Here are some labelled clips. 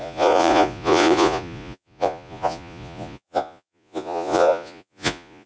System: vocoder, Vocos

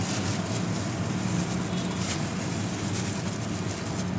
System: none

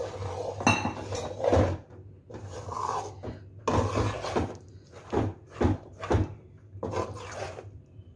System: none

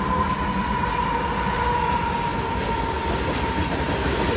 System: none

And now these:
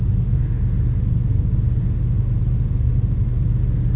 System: none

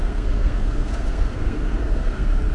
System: codec, SNAC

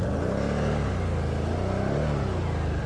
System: none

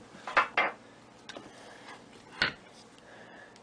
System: none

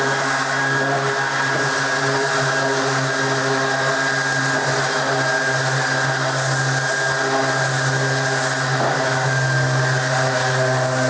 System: none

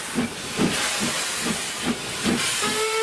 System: none